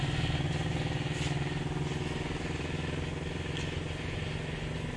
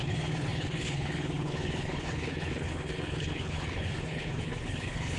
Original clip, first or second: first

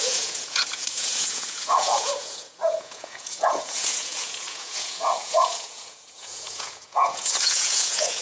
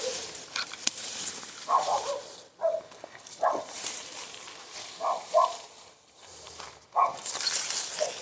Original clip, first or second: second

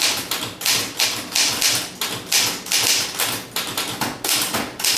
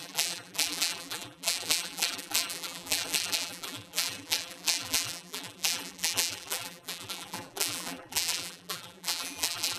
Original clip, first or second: first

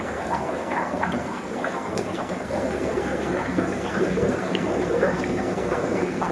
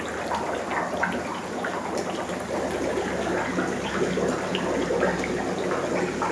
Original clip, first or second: second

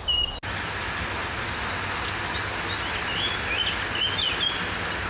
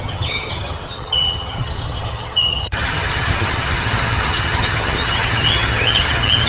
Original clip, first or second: first